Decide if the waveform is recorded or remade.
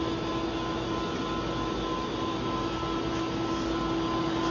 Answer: recorded